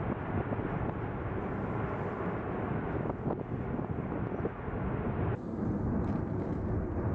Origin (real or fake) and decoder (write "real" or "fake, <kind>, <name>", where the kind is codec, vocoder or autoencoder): real